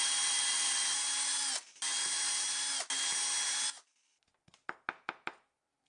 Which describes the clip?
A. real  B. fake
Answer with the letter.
A